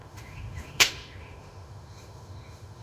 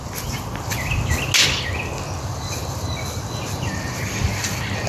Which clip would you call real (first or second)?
second